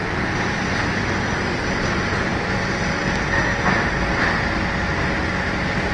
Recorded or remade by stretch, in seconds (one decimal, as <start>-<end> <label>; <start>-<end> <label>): 0.0-5.9 recorded